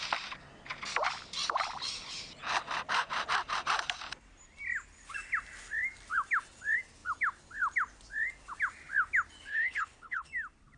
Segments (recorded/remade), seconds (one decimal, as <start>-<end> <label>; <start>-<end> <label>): 0.0-9.5 recorded; 9.5-10.3 remade; 10.3-10.8 recorded